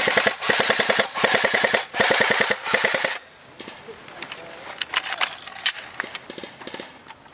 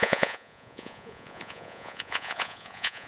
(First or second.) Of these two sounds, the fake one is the second